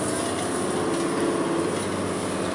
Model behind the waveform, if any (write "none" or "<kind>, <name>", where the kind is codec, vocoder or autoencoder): none